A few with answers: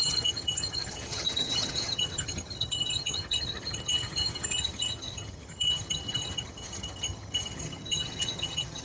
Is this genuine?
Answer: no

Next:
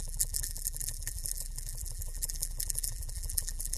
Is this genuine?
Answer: no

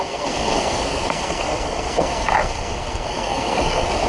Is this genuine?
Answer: no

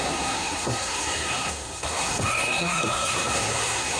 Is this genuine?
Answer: no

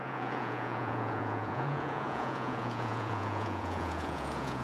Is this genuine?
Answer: no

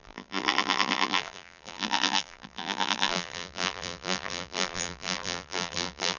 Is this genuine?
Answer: no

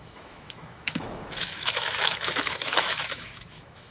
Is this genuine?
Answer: no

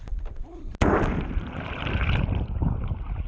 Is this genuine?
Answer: yes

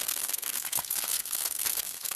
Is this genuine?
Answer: no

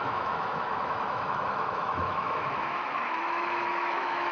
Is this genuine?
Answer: no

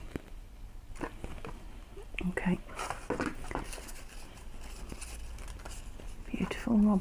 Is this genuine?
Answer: yes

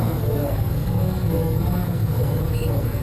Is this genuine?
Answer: no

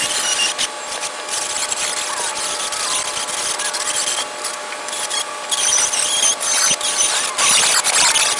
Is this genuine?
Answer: yes